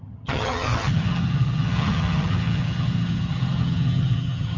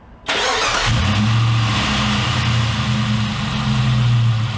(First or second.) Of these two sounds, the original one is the second